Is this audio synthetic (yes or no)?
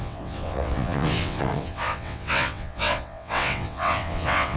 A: yes